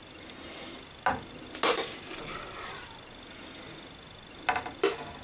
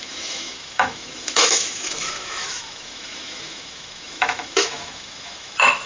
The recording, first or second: first